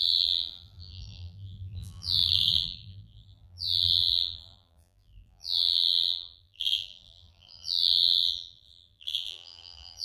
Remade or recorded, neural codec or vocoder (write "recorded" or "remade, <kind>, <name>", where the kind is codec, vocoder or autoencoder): remade, vocoder, BigVGAN v2